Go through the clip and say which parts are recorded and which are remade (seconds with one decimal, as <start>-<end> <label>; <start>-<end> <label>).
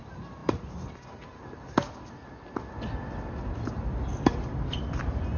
0.0-4.1 recorded; 4.1-5.0 remade; 5.0-5.4 recorded